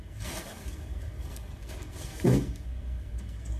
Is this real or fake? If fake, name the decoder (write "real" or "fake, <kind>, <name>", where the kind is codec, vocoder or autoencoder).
fake, codec, SNAC